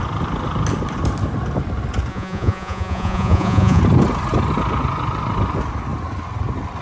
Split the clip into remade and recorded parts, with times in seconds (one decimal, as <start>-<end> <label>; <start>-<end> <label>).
0.0-2.1 recorded; 2.1-3.8 remade; 3.8-6.8 recorded